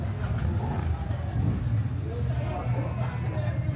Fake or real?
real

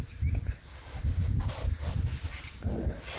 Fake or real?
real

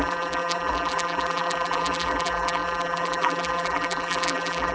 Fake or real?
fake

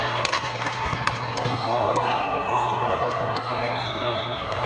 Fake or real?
fake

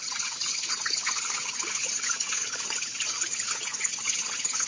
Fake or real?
fake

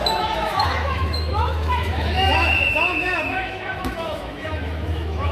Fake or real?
fake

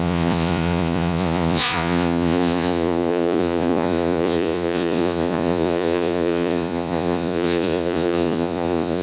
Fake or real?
fake